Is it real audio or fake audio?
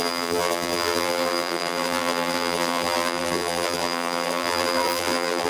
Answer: fake